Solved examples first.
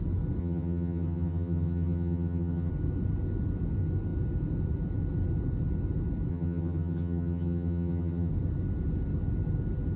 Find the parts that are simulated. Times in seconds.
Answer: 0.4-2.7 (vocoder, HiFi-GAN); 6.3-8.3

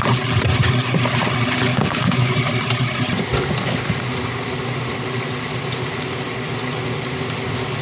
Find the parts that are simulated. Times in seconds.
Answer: 1.7-2.3 (codec, DAC)